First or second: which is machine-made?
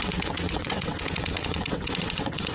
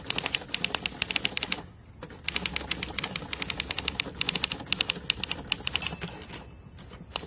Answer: first